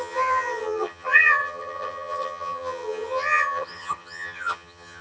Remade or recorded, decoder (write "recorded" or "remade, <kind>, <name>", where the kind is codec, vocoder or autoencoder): remade, vocoder, HiFi-GAN